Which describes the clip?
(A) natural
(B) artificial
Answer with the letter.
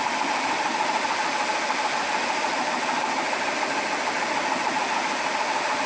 A